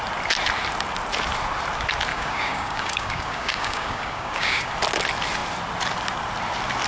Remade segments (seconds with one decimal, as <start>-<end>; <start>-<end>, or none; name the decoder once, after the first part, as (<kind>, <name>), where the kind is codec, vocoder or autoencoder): 2.1-4.7 (codec, DAC)